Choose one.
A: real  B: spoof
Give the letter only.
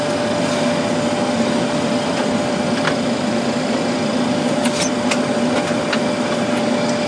A